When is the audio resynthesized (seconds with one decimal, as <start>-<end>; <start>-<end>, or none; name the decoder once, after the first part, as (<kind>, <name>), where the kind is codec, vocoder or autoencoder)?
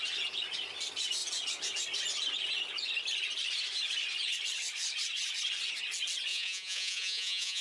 6.3-7.6 (vocoder, Vocos)